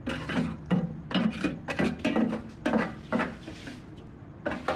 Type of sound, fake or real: real